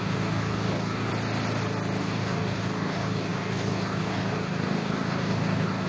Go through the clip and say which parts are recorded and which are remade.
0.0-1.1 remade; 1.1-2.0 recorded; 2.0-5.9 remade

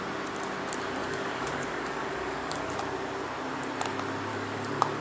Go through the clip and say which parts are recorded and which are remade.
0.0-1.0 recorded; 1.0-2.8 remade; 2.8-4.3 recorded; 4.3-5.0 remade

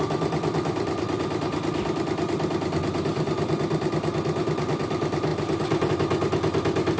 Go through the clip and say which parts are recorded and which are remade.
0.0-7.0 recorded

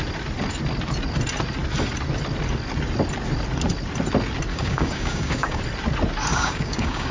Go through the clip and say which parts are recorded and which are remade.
0.0-4.5 recorded; 4.5-5.6 remade; 5.6-6.3 recorded; 6.3-7.1 remade

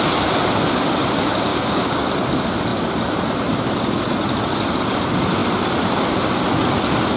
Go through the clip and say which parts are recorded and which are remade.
0.0-1.5 recorded; 1.5-2.1 remade; 2.1-7.2 recorded

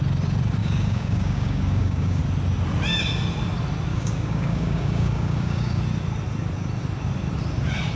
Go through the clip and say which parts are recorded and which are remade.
0.0-0.6 recorded; 0.6-2.2 remade; 2.2-3.9 recorded; 3.9-5.8 remade; 5.8-8.0 recorded

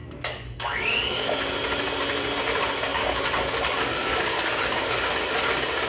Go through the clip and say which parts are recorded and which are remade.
0.0-1.3 remade; 1.3-2.9 recorded; 2.9-5.0 remade; 5.0-5.9 recorded